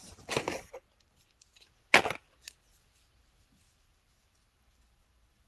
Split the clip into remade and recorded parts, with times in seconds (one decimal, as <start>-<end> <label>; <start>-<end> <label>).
0.0-5.5 recorded